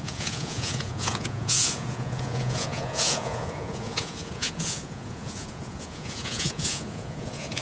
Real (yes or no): no